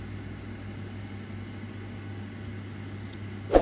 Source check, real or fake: real